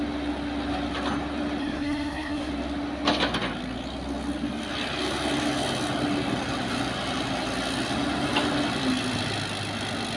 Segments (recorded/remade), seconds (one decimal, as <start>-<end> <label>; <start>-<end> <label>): 0.0-1.6 recorded; 1.6-2.5 remade; 2.5-10.2 recorded